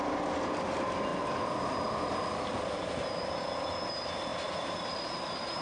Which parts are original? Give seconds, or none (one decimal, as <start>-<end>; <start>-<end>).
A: 0.0-1.1; 3.3-4.3